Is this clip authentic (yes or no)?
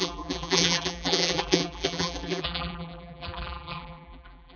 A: no